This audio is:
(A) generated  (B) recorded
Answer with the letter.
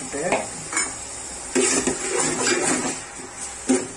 B